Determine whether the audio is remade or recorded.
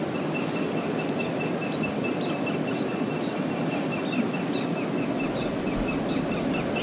recorded